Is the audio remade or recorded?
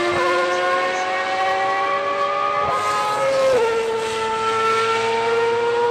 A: recorded